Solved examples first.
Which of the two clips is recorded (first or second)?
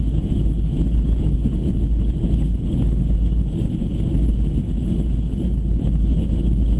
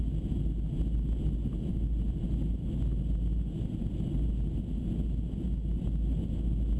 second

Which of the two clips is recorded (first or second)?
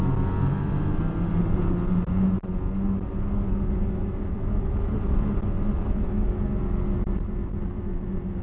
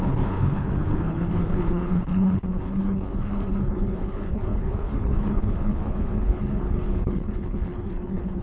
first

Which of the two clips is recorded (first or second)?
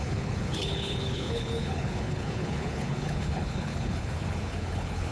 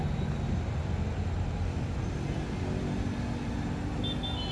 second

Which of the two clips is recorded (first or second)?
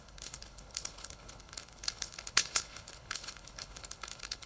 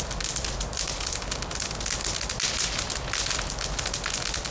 second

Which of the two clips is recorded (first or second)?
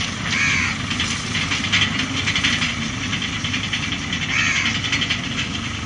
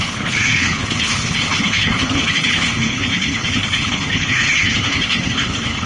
first